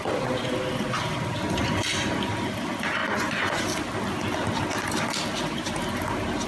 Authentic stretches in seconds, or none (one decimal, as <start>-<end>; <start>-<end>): 0.0-3.0; 3.6-6.5